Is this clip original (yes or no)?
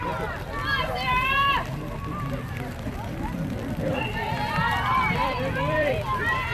no